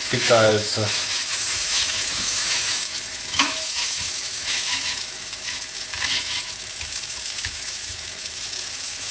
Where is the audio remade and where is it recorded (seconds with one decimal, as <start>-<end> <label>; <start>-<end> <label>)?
0.0-9.1 remade